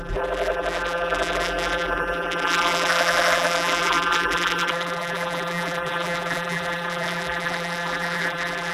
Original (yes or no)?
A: no